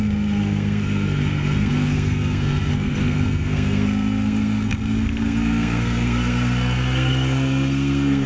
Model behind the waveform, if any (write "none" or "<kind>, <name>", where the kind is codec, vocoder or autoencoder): codec, SNAC